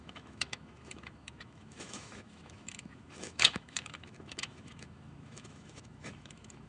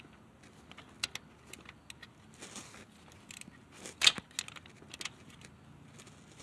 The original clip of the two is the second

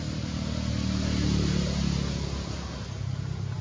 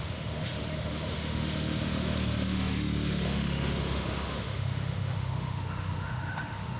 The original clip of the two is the first